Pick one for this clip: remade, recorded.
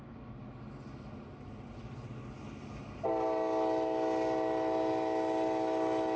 recorded